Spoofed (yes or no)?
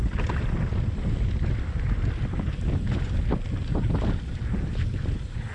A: no